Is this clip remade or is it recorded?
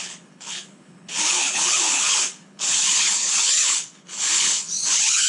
remade